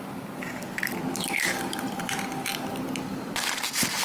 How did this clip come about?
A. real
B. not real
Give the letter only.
A